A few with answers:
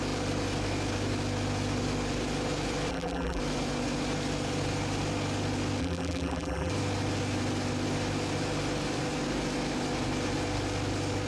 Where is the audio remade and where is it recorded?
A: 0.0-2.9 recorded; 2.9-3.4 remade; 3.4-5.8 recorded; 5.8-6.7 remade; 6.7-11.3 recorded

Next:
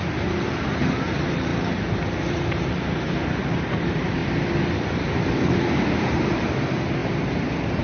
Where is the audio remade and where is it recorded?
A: 0.0-1.5 remade; 1.5-2.3 recorded; 2.3-4.2 remade; 4.2-5.4 recorded; 5.4-7.0 remade; 7.0-7.8 recorded

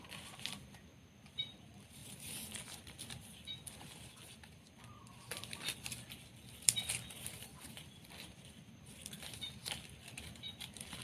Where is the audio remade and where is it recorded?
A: 0.0-2.0 remade; 2.0-3.1 recorded; 3.1-11.0 remade